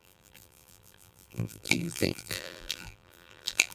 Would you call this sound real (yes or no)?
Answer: no